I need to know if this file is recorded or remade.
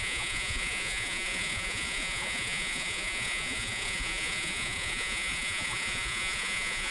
remade